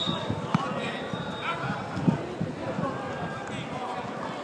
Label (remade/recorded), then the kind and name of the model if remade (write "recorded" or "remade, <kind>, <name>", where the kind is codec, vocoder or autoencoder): recorded